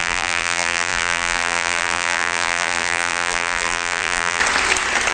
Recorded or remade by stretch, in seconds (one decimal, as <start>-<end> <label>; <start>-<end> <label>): 0.0-4.4 remade; 4.4-5.1 recorded